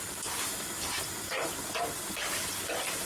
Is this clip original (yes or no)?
yes